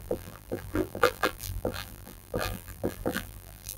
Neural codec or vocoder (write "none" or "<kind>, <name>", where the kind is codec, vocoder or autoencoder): vocoder, BigVGAN v2